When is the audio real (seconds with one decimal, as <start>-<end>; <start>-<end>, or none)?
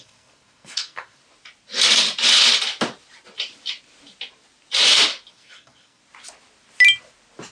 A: 1.2-5.3; 6.0-7.5